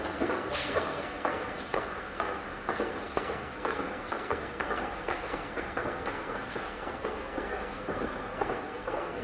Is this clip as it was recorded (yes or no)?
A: no